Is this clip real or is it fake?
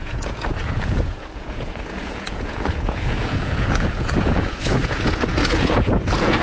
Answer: fake